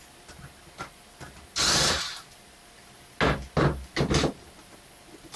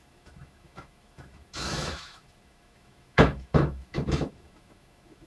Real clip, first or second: first